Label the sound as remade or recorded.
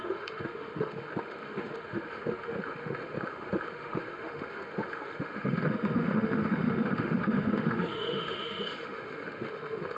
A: remade